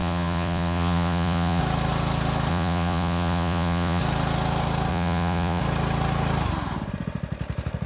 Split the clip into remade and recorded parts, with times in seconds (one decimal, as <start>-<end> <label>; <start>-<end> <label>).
0.0-1.6 remade; 1.6-2.5 recorded; 2.5-4.0 remade; 4.0-4.9 recorded; 4.9-5.6 remade; 5.6-7.9 recorded